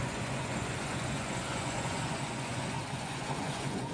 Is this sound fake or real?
fake